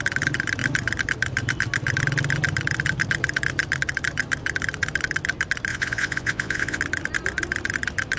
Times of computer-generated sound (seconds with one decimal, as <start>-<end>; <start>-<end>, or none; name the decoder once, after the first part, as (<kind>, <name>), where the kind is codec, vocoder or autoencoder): 5.7-6.8 (vocoder, Vocos)